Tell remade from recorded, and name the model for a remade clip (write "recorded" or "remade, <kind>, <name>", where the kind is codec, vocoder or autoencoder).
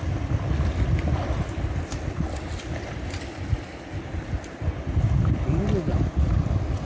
recorded